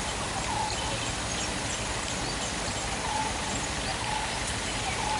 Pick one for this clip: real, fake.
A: real